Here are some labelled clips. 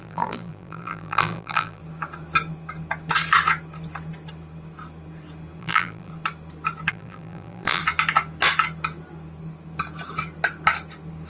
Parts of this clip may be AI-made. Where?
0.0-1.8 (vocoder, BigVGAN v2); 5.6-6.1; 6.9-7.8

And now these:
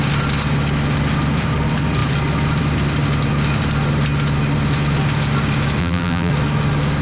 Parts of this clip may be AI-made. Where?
5.8-6.3 (vocoder, BigVGAN v2)

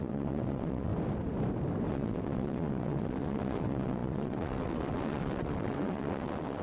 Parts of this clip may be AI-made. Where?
0.0-0.9 (vocoder, WaveNeXt); 1.9-6.6

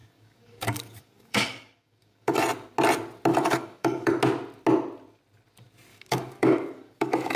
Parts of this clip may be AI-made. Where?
0.0-2.4 (codec, DAC); 3.3-4.1; 5.9-7.4

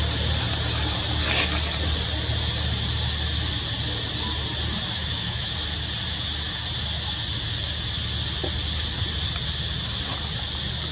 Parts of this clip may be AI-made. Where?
5.0-5.5 (autoencoder, DAC-VAE)

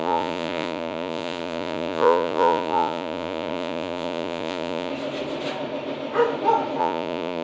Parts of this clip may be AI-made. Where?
0.0-4.9 (vocoder, Vocos); 6.8-7.4